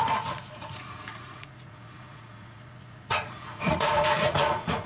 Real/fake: fake